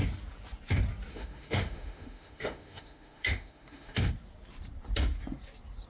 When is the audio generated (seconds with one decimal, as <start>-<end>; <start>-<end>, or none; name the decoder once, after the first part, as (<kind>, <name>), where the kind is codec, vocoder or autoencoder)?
1.1-4.1 (autoencoder, DAC-VAE)